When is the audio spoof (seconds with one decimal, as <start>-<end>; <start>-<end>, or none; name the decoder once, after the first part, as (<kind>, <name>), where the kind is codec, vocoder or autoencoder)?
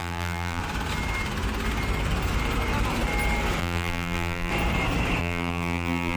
0.0-0.6 (vocoder, BigVGAN v2); 3.6-4.5; 5.2-6.2